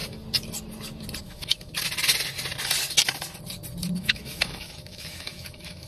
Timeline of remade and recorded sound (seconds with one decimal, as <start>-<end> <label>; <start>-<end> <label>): 0.0-1.2 recorded; 1.2-1.7 remade; 1.7-4.0 recorded; 4.0-5.9 remade